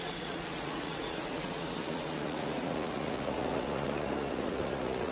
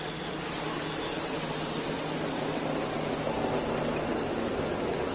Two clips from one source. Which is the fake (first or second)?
first